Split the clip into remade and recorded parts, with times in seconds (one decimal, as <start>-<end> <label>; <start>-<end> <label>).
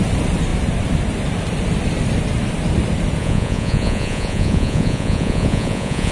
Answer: 0.0-3.2 recorded; 3.2-6.1 remade